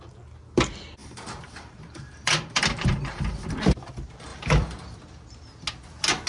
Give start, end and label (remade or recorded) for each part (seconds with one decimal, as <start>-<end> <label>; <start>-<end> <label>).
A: 0.0-1.0 recorded; 1.0-3.5 remade; 3.5-4.3 recorded; 4.3-5.0 remade; 5.0-6.3 recorded